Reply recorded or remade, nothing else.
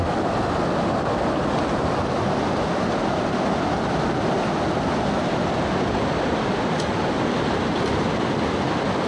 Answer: recorded